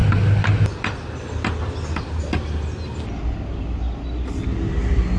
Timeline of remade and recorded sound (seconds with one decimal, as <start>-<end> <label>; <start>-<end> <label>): 0.0-5.2 recorded